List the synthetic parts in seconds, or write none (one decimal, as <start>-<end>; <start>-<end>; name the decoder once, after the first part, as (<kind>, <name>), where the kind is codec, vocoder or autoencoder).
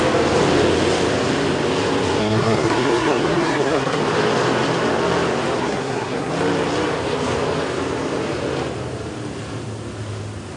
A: 2.2-4.0 (codec, SNAC); 5.6-6.3